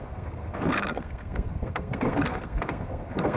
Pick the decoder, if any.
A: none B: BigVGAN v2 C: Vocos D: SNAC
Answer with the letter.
D